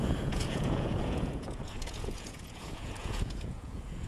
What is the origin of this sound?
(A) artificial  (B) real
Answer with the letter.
A